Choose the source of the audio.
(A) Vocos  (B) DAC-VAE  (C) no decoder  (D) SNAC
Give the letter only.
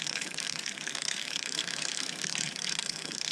D